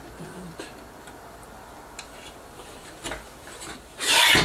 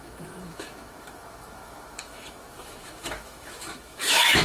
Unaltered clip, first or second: first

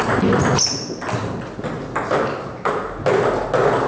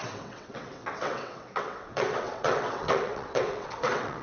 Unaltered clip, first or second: first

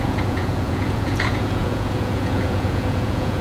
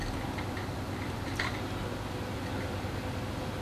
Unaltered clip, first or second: second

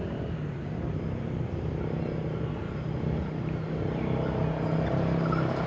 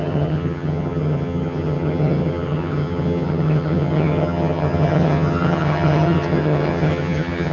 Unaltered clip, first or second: first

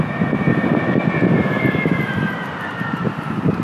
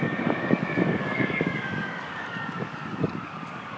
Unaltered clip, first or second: first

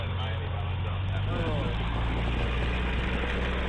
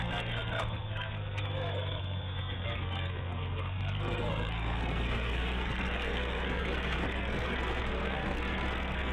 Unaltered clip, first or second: first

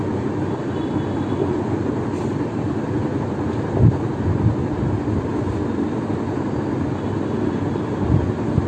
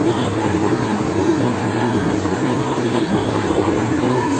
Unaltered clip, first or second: first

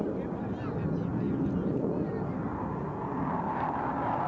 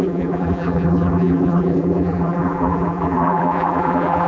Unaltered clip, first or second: first